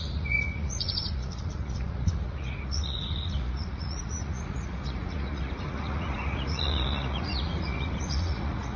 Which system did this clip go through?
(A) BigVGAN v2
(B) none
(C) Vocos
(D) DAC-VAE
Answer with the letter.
C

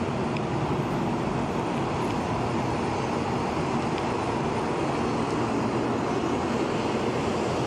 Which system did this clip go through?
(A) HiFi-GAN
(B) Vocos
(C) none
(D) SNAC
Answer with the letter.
C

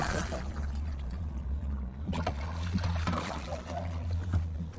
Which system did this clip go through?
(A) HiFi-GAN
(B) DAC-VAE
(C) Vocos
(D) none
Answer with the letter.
C